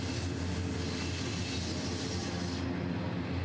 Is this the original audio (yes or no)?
yes